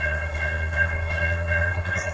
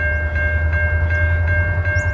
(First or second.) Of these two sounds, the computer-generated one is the first